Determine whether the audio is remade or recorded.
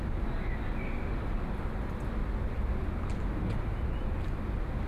recorded